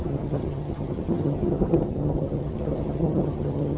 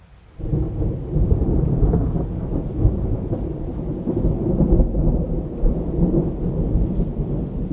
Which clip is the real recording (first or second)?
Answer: second